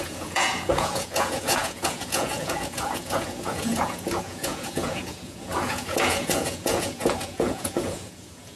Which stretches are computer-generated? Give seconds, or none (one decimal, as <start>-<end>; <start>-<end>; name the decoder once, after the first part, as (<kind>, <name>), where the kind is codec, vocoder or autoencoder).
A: 0.0-8.6 (vocoder, Vocos)